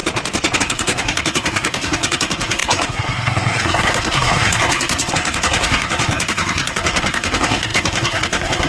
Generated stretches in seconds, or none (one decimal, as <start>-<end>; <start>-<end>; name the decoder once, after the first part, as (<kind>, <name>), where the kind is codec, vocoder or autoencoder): 0.6-8.7 (codec, SNAC)